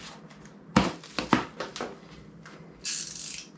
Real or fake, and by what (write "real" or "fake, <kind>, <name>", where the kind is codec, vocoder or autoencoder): real